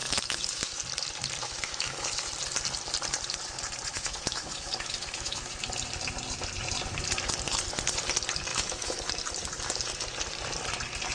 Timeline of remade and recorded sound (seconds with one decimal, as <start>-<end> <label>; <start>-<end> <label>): 0.0-0.8 remade; 0.8-1.4 recorded; 1.4-2.3 remade; 2.3-3.9 recorded; 3.9-5.5 remade; 5.5-8.5 recorded; 8.5-9.1 remade; 9.1-11.1 recorded